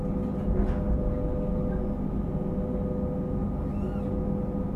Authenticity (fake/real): real